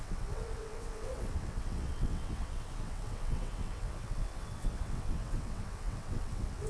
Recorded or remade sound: remade